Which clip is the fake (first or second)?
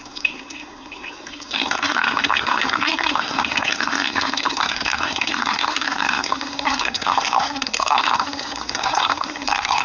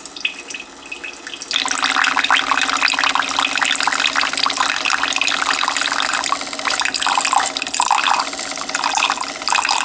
first